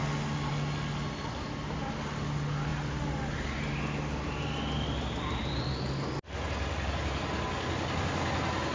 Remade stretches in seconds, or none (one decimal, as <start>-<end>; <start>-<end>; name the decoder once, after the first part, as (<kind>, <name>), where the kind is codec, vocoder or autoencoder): none